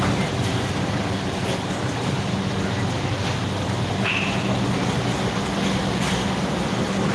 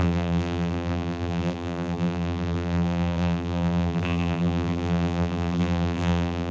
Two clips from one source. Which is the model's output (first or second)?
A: second